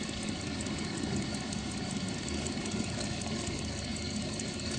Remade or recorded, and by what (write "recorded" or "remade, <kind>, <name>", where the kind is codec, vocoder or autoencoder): remade, codec, DAC